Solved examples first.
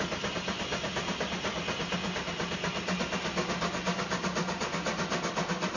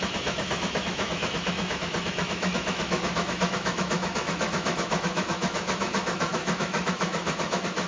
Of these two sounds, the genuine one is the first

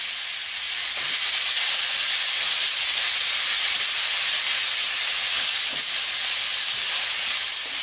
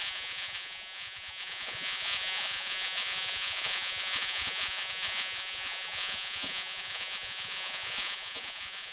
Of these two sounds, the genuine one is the first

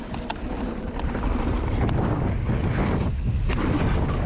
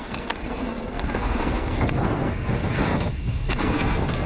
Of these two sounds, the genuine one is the first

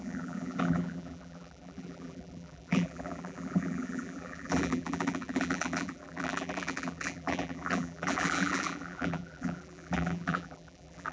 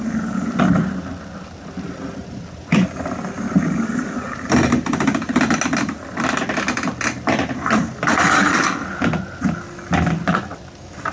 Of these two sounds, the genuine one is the second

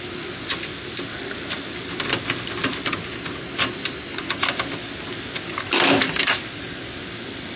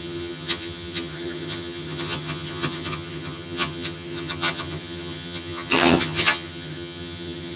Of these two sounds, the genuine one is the first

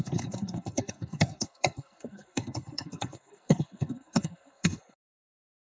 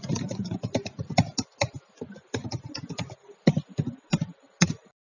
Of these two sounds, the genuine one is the second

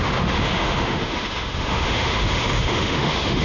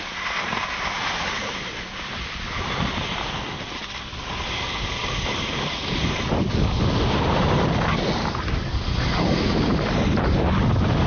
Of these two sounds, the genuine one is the second